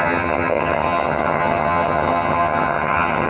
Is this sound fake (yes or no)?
yes